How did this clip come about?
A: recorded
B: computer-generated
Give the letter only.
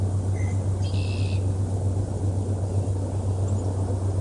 A